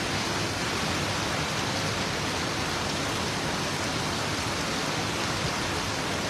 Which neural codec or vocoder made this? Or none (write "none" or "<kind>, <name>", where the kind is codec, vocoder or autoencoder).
none